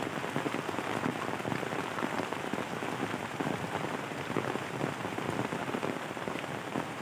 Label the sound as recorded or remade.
recorded